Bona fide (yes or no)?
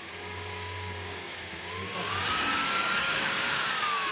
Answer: no